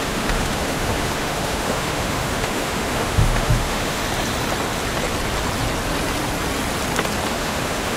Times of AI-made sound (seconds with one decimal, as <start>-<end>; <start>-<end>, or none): 0.0-4.0; 7.3-8.0